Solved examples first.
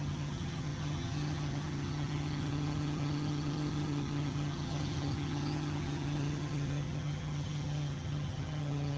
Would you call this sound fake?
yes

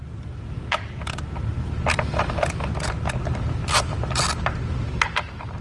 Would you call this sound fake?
no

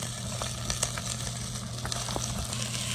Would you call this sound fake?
no